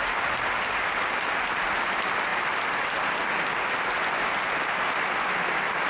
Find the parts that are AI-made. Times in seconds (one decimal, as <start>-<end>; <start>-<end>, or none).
none